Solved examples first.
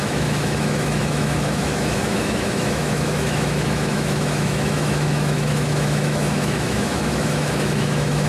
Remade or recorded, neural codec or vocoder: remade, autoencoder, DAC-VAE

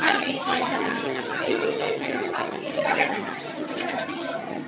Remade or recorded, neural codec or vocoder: remade, vocoder, HiFi-GAN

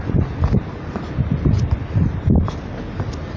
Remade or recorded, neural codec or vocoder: recorded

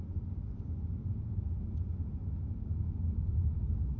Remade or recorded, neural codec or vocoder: recorded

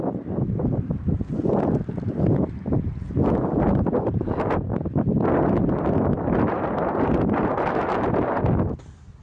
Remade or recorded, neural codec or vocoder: recorded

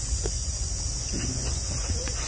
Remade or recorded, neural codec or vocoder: remade, vocoder, Vocos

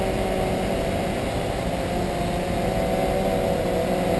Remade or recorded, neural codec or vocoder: recorded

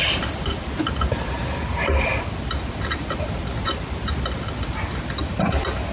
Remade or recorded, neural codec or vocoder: recorded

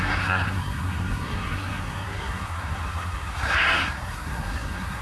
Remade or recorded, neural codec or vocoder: remade, codec, SNAC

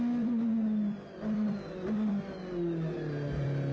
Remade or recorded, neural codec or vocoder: recorded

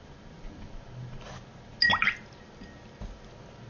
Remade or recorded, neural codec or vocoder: recorded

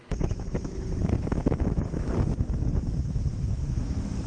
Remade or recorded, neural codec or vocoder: remade, autoencoder, DAC-VAE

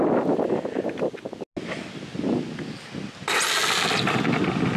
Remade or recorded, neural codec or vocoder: recorded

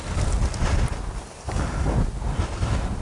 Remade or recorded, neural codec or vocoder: recorded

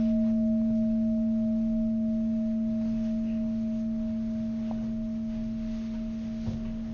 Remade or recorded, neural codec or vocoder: recorded